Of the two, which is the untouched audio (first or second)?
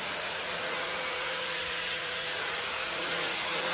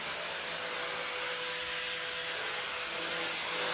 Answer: second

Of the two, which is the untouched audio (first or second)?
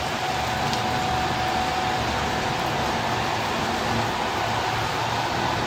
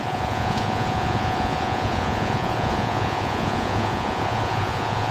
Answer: first